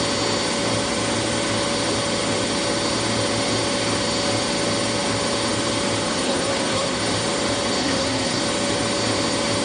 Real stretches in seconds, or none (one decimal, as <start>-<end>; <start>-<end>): 0.0-6.1; 7.0-7.8; 8.4-9.6